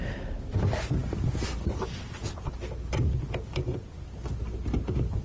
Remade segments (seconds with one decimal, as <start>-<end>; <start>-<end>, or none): none